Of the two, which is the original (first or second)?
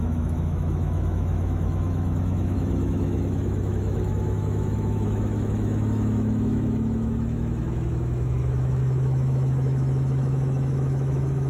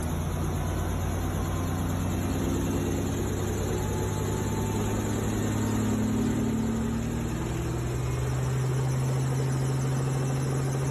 second